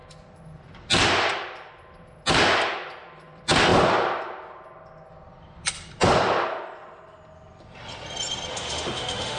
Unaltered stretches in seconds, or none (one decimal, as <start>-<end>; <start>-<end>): 0.0-8.5